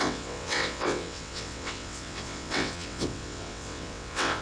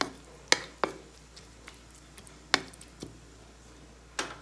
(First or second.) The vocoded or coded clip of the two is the first